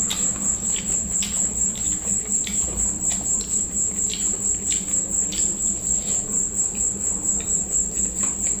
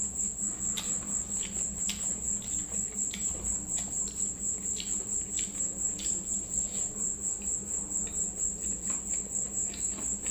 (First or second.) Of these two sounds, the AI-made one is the first